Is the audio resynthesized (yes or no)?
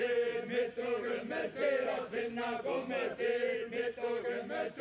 no